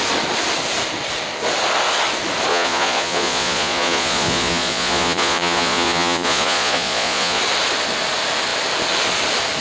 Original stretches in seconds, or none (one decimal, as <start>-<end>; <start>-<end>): 0.0-2.5; 7.4-9.6